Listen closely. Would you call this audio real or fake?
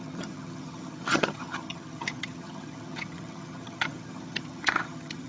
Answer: fake